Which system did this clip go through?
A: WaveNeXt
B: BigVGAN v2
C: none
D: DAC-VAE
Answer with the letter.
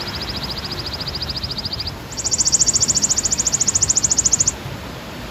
C